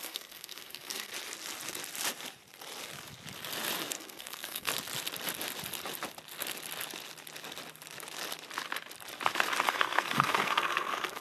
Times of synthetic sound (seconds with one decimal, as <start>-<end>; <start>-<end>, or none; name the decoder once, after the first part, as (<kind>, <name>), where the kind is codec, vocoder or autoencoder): 0.0-1.1 (codec, SNAC); 3.8-4.7; 9.7-11.2